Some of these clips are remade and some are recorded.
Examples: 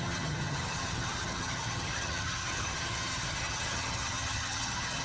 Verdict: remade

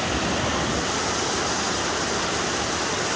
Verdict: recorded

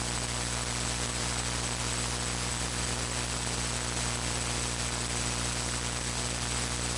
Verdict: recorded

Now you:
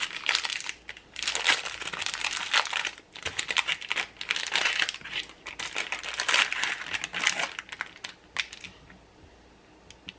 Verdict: recorded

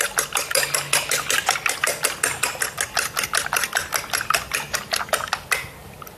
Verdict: recorded